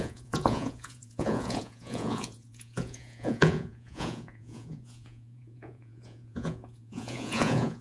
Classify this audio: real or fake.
fake